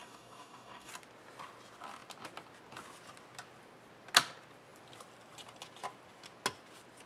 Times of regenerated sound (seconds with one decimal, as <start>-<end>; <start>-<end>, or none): 0.0-0.9